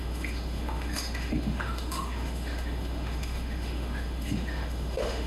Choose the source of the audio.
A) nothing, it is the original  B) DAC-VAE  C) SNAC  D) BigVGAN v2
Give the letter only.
B